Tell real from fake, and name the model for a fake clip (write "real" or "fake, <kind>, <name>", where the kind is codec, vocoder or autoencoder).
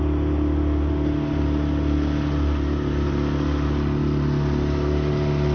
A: real